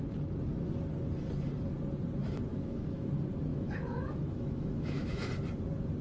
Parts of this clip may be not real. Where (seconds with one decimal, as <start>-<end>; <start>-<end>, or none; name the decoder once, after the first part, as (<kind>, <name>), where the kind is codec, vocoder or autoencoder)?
2.5-3.1 (autoencoder, DAC-VAE); 3.5-5.3